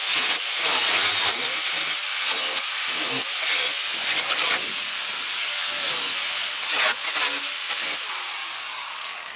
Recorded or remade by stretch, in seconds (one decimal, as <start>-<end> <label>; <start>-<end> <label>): 0.0-3.9 recorded; 3.9-5.9 remade; 5.9-8.4 recorded; 8.4-9.4 remade